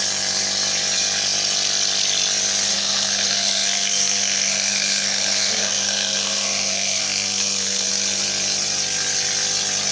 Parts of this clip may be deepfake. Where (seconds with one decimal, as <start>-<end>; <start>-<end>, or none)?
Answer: 2.7-7.9